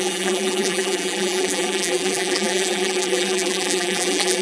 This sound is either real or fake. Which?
fake